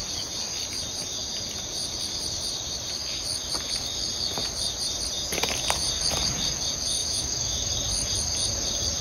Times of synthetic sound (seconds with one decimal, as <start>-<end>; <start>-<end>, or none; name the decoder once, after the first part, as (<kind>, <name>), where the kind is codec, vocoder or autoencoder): 7.0-7.7 (autoencoder, DAC-VAE)